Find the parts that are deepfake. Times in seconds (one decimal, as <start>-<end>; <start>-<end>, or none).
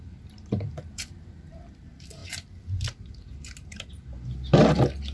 0.7-1.6